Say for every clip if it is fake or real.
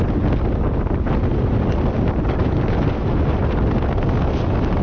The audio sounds real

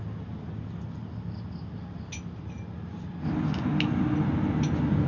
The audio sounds real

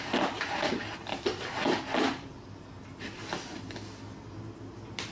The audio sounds real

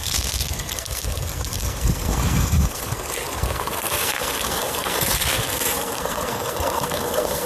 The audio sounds fake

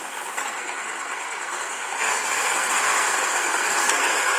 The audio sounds fake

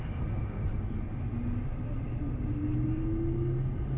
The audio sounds real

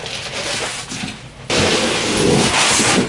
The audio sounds real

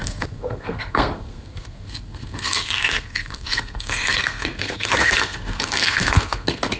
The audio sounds fake